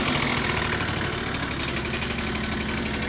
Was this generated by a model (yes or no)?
no